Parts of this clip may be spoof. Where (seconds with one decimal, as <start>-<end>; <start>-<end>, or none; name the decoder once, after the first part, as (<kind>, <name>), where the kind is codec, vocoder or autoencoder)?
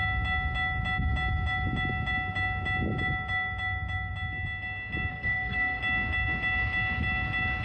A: 5.1-5.8 (codec, SNAC)